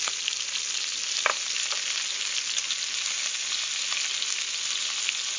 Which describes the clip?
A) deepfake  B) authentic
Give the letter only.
B